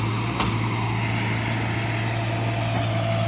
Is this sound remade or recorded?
recorded